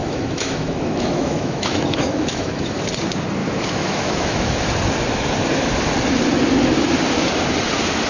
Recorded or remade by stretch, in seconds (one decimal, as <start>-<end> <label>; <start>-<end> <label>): 0.0-2.8 remade; 2.8-3.4 recorded; 3.4-4.7 remade; 4.7-8.1 recorded